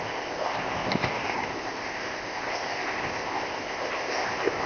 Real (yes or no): no